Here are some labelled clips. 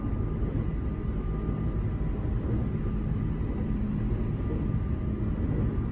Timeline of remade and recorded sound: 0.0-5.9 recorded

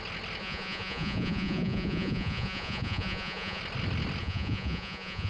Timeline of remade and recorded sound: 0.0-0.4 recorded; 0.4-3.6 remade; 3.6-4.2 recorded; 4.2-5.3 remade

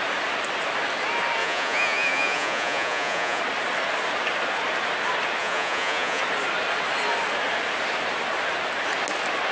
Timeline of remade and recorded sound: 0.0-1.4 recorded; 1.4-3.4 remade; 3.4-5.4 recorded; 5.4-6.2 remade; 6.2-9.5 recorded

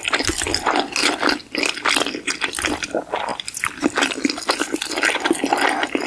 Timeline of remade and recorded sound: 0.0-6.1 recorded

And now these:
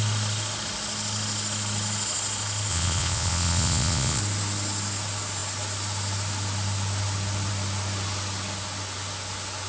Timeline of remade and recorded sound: 0.0-2.7 recorded; 2.7-4.2 remade; 4.2-9.7 recorded

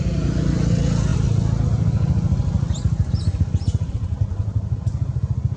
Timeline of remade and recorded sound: 0.0-5.6 recorded

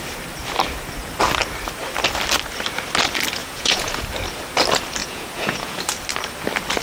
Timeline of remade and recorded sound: 0.0-3.4 recorded; 3.4-4.0 remade; 4.0-5.0 recorded; 5.0-5.8 remade; 5.8-6.8 recorded